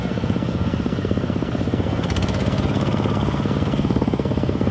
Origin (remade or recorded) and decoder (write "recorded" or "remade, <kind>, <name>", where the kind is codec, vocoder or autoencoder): remade, codec, SNAC